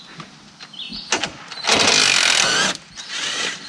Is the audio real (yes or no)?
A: yes